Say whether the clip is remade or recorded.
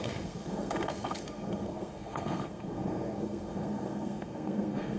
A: remade